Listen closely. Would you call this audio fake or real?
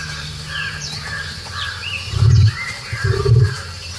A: fake